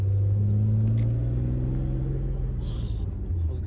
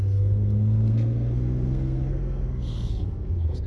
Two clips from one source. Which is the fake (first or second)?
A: second